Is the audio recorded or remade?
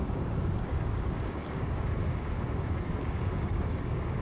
remade